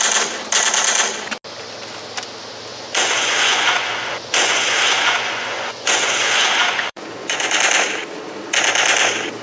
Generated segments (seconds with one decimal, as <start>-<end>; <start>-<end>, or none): 2.7-7.6